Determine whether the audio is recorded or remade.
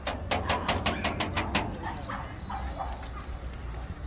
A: recorded